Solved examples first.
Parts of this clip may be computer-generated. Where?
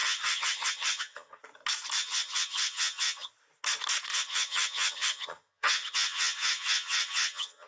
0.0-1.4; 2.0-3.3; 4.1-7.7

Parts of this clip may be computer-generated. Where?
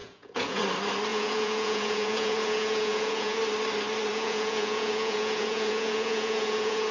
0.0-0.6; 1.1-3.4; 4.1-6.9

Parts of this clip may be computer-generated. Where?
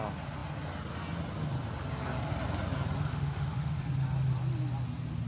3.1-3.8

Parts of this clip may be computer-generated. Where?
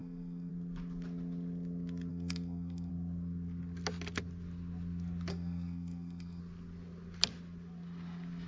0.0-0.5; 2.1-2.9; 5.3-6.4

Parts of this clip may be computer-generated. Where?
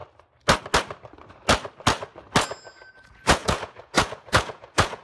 2.9-5.0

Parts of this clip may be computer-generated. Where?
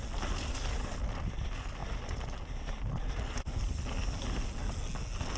none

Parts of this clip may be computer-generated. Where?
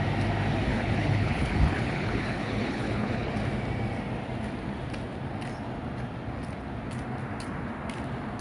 0.7-3.3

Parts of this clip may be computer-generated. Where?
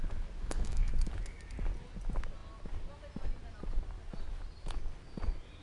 0.4-0.9